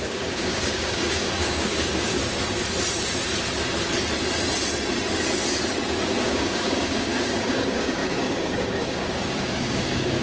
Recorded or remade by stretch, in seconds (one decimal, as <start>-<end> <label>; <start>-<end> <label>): 0.0-2.2 remade; 2.2-6.2 recorded; 6.2-10.2 remade